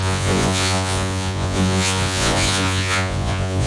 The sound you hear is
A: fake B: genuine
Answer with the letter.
A